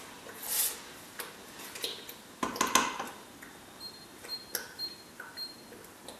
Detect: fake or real real